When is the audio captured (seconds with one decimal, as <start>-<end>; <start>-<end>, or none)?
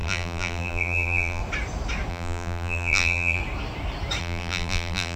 1.4-2.1; 3.4-4.2